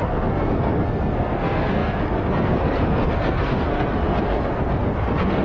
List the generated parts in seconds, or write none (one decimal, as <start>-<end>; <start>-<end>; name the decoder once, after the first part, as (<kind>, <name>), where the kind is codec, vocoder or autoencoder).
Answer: 0.0-5.4 (codec, SNAC)